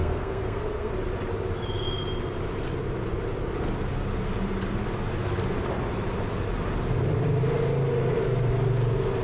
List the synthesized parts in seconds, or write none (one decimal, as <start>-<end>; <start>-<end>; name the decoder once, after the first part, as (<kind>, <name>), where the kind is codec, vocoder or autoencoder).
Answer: 0.0-0.9 (codec, SNAC)